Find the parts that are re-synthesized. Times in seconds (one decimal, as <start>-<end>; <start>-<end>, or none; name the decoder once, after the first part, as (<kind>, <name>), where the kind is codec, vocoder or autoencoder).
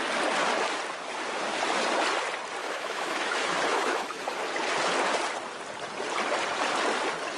2.6-4.2 (autoencoder, DAC-VAE)